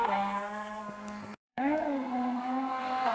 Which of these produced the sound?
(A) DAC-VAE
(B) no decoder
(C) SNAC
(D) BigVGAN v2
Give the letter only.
C